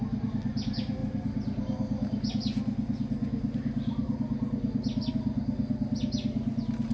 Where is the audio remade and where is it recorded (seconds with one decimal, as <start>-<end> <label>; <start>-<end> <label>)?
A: 0.0-6.9 recorded